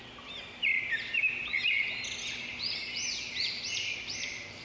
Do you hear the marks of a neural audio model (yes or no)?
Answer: no